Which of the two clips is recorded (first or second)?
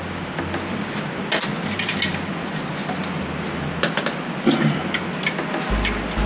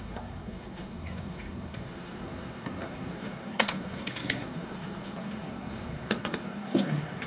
first